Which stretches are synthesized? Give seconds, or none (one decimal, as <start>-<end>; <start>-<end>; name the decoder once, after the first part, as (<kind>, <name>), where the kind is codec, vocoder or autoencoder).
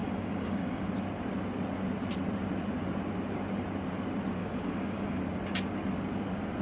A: 0.0-0.9 (codec, DAC); 4.4-5.2